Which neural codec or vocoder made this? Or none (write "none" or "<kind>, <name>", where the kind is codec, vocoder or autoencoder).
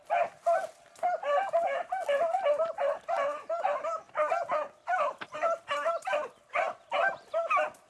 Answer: none